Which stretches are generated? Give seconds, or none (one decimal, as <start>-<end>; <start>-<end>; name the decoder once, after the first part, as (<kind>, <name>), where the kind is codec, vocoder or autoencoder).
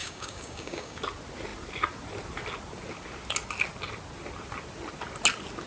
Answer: 0.0-1.0 (codec, DAC)